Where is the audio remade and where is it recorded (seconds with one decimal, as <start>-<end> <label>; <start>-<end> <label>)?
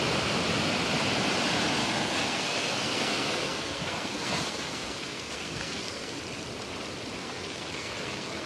0.0-1.8 recorded; 1.8-6.2 remade; 6.2-7.2 recorded; 7.2-8.5 remade